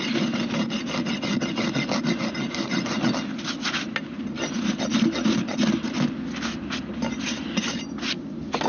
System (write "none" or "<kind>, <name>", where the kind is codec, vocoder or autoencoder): none